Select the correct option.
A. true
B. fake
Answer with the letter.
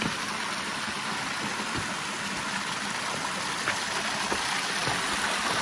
A